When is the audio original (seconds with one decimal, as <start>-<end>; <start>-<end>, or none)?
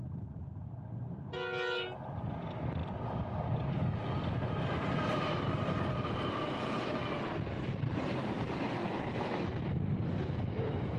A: 0.0-11.0